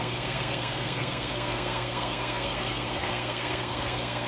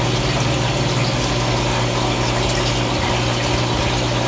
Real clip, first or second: second